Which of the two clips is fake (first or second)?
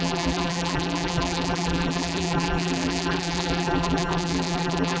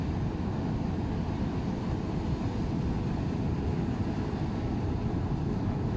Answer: first